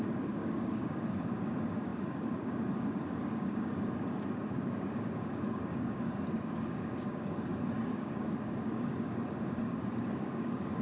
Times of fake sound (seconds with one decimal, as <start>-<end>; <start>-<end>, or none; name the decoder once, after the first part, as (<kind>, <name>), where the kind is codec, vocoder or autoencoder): 0.0-10.8 (codec, DAC)